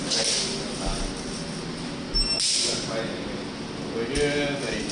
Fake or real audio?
real